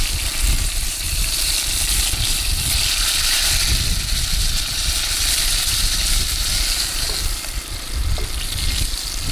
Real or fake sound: real